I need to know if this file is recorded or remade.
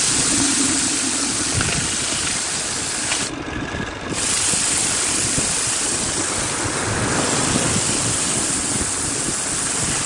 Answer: recorded